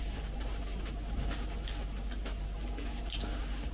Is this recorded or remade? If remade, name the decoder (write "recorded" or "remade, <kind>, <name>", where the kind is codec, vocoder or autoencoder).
recorded